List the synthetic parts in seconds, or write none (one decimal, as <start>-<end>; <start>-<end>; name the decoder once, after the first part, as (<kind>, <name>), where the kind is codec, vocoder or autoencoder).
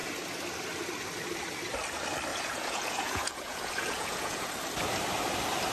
2.3-4.5 (vocoder, Vocos)